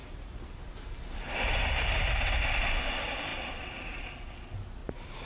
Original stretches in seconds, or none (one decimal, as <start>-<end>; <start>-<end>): 2.7-3.3; 4.0-4.8